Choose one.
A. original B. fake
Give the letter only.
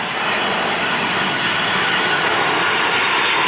A